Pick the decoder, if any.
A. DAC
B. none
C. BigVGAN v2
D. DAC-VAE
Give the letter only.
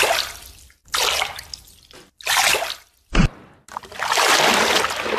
B